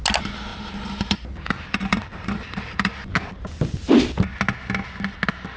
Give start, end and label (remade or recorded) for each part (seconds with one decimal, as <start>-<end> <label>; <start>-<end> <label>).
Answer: 0.0-0.5 recorded; 0.5-3.1 remade; 3.1-5.6 recorded